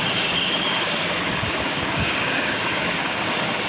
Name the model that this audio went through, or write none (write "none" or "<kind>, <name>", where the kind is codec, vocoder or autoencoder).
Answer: codec, DAC